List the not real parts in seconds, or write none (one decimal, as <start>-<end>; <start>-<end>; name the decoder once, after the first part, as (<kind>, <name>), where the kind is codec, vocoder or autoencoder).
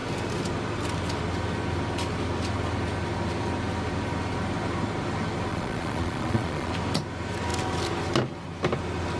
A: 5.5-6.7 (vocoder, Vocos)